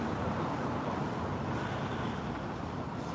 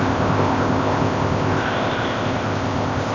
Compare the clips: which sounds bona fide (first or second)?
first